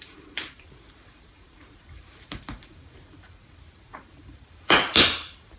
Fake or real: fake